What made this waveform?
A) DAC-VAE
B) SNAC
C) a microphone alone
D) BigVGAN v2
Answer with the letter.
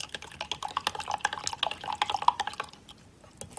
C